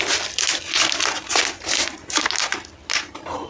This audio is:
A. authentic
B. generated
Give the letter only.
A